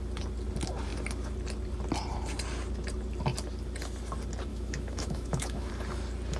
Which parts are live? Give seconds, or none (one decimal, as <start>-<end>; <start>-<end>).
0.0-4.5; 5.7-6.4